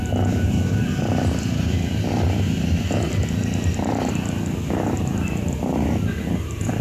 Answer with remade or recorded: recorded